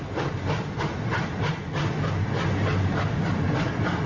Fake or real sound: real